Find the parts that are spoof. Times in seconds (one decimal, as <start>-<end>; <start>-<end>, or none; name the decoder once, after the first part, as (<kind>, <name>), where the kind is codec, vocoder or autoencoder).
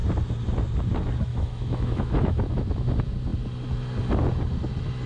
1.3-2.9 (autoencoder, DAC-VAE)